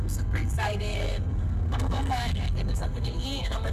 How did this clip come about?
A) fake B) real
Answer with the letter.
A